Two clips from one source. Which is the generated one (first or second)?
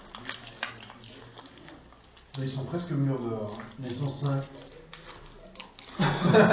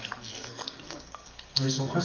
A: second